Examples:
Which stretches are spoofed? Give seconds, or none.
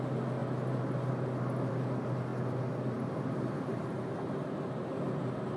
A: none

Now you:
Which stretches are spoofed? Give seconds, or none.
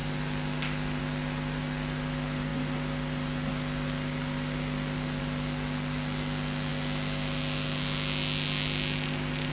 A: none